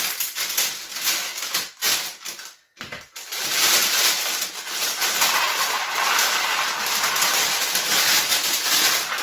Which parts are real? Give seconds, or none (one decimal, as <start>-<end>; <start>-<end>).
0.0-3.3; 7.1-9.2